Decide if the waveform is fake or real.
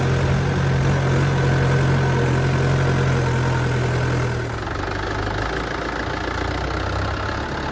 real